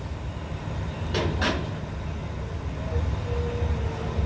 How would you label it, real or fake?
real